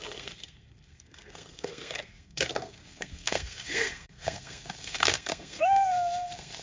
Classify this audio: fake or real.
fake